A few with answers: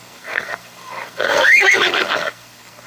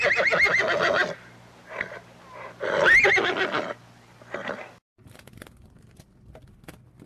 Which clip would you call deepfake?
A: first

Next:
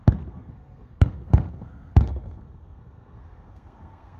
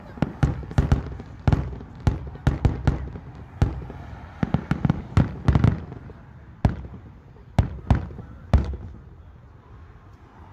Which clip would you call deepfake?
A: first